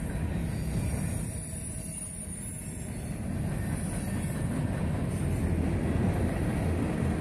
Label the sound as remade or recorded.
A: recorded